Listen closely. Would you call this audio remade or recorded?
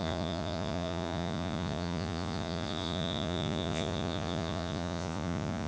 remade